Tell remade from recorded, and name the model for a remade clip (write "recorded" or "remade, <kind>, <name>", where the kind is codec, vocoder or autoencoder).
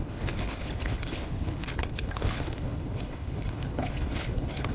remade, codec, HILCodec